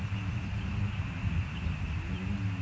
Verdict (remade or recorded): recorded